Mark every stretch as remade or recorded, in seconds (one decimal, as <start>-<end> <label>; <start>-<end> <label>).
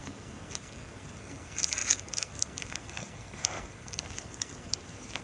0.0-5.2 remade